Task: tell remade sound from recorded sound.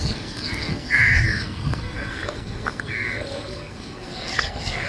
remade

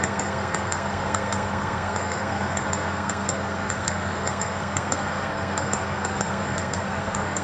remade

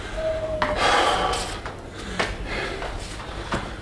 recorded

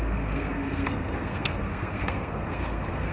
remade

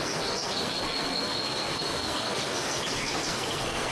remade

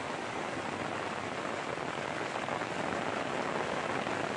recorded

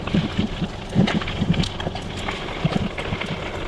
recorded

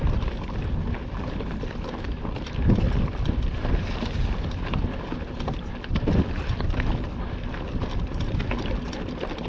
recorded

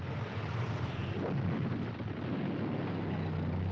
recorded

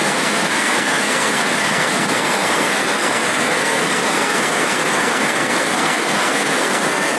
remade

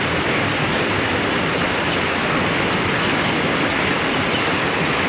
recorded